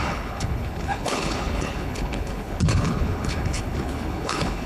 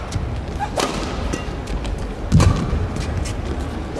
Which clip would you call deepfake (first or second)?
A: first